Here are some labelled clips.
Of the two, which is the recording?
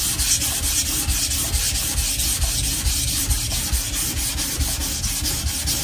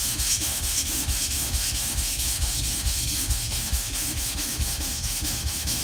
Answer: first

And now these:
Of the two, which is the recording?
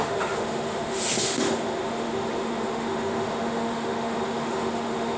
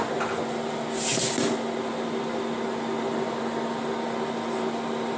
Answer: second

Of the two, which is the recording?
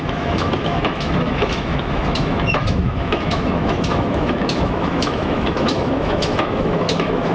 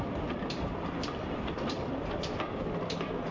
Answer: second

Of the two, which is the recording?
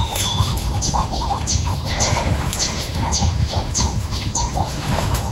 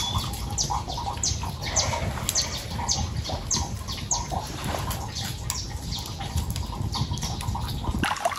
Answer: second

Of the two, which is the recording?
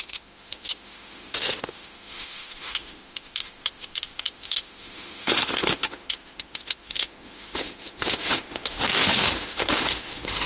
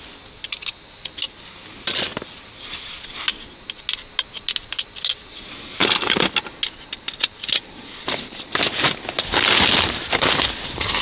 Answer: second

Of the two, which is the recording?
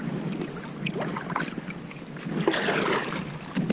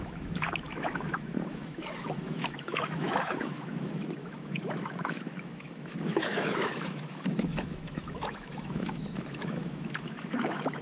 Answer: first